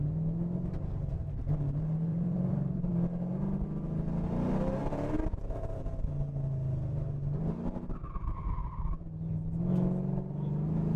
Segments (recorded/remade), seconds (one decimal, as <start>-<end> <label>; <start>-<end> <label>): 0.0-2.1 recorded; 2.1-2.9 remade; 2.9-4.8 recorded; 4.8-5.8 remade; 5.8-11.0 recorded